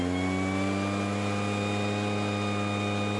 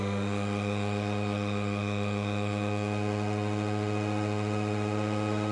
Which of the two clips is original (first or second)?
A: first